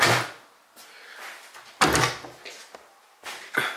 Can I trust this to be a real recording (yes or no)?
yes